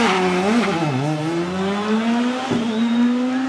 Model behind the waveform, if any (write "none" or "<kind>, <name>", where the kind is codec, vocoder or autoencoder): none